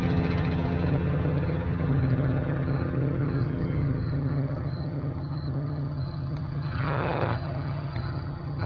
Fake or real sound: fake